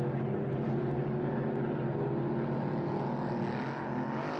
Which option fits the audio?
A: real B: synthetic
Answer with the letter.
A